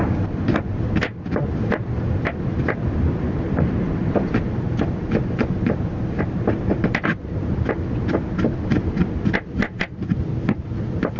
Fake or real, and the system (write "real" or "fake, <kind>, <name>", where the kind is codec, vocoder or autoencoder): real